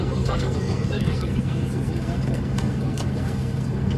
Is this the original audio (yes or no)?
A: no